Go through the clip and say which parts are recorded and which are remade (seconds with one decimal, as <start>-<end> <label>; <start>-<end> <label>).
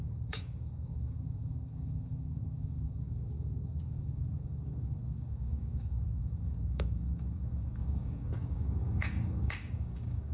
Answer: 0.0-10.3 remade